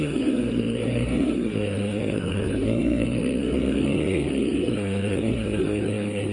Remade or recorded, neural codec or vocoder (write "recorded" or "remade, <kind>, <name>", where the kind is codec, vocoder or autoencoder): remade, codec, SNAC